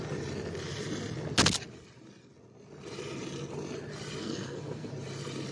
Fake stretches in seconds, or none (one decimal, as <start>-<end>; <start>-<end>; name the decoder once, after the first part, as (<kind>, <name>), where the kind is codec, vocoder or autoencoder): 4.2-4.9 (codec, SNAC)